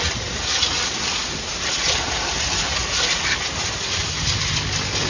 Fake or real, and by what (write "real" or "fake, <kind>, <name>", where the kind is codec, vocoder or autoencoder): real